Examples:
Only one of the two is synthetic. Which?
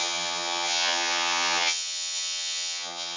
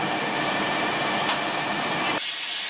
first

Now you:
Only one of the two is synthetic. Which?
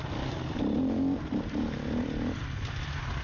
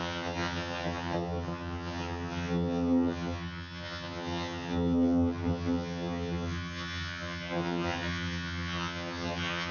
second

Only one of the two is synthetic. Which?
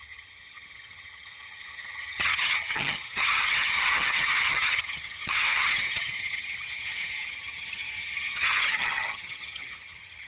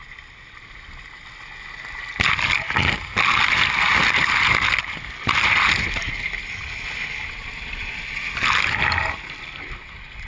first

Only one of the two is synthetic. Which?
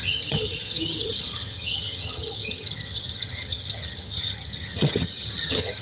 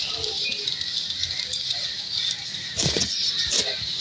first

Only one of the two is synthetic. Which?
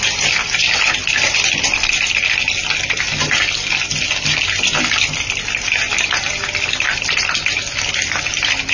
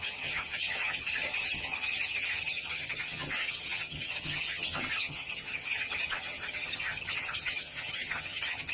second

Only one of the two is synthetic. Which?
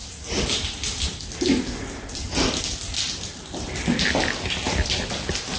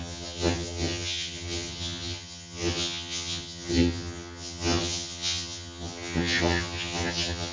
second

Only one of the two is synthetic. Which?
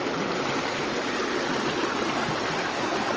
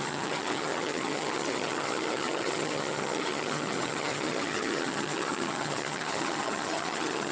second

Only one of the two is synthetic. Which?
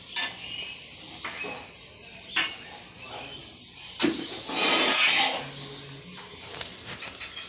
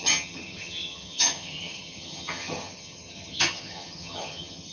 second